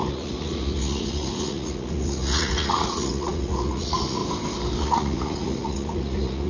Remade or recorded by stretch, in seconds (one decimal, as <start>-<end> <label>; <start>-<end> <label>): 0.0-4.2 remade; 4.2-4.8 recorded; 4.8-6.5 remade